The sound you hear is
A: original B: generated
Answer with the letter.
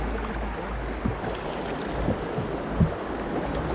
A